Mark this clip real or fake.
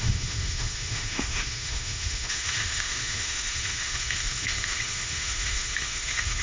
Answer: fake